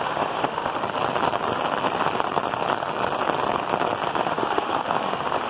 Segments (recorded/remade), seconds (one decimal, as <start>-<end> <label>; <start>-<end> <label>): 0.0-0.8 remade; 0.8-4.1 recorded; 4.1-5.5 remade